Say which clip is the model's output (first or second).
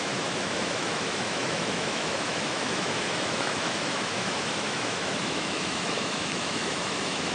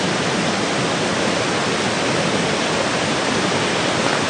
first